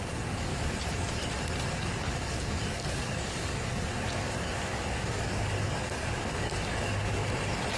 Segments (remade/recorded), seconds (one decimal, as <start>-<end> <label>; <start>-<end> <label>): 0.0-0.5 remade; 0.5-1.7 recorded; 1.7-7.2 remade; 7.2-7.8 recorded